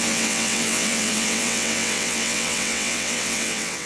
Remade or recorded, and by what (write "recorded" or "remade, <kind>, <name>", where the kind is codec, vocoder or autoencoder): remade, vocoder, WaveNeXt